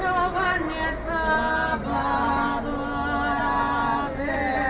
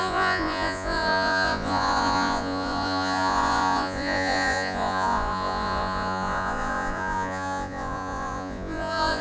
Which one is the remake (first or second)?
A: second